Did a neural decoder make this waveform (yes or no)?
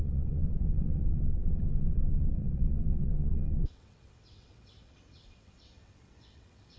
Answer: yes